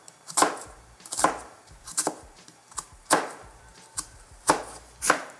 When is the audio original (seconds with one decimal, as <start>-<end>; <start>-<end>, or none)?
none